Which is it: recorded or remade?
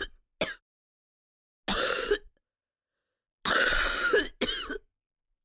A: recorded